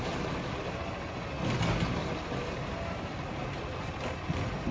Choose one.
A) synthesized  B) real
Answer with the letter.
B